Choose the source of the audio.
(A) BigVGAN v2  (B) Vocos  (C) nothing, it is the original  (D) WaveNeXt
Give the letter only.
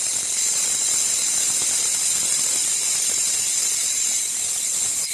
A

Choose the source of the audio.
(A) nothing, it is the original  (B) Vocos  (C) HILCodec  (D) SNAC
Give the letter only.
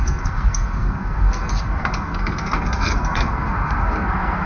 D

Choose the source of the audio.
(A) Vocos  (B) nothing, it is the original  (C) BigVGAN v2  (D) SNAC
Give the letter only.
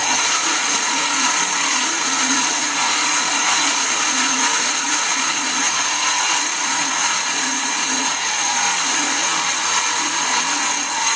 A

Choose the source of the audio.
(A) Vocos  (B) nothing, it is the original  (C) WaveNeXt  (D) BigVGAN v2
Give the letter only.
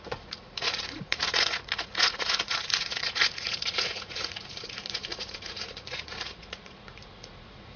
A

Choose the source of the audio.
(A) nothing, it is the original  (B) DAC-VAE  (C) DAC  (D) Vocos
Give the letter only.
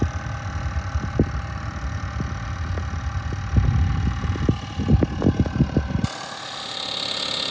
A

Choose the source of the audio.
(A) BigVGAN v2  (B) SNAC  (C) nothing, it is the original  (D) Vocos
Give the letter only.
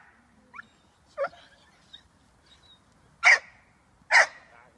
C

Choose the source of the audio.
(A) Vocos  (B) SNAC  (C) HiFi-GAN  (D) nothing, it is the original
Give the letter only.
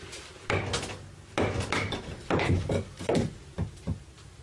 D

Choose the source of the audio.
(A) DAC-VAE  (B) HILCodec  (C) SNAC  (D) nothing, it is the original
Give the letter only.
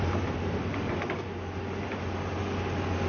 D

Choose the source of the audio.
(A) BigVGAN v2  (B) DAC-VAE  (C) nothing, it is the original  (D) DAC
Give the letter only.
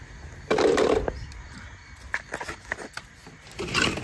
C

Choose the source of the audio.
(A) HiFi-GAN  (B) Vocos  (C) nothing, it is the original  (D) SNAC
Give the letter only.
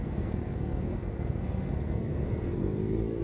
D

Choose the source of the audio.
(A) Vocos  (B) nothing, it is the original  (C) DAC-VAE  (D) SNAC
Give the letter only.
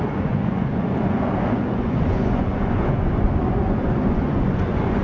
A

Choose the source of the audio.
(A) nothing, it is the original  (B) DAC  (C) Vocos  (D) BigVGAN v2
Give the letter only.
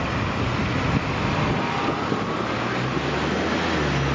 A